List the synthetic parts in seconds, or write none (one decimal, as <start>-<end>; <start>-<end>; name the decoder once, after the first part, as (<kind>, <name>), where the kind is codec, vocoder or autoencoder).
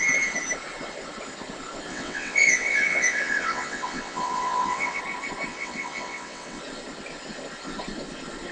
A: 1.9-5.0 (vocoder, WaveNeXt); 5.5-6.6